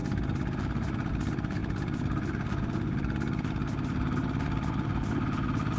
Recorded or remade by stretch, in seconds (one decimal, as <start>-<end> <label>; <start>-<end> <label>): 0.0-5.8 recorded